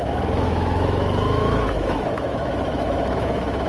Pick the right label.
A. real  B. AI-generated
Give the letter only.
B